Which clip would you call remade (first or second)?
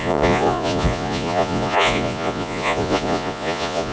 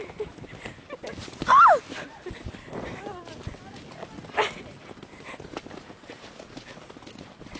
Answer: first